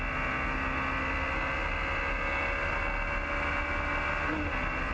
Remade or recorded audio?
recorded